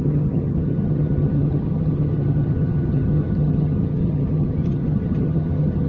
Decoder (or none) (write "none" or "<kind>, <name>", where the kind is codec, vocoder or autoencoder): vocoder, HiFi-GAN